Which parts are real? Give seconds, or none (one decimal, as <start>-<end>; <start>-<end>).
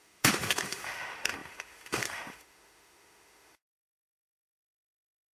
none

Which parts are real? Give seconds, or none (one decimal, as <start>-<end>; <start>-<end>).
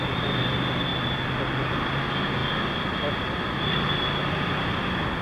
0.0-5.2